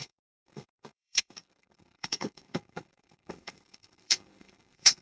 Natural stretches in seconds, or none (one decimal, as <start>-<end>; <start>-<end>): none